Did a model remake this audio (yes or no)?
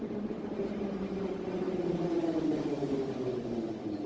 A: no